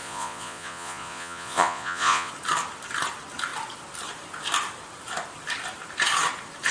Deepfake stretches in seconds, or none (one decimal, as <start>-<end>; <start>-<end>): 0.0-2.3